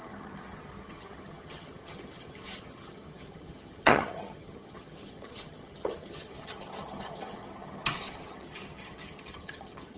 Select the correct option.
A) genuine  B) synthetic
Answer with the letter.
B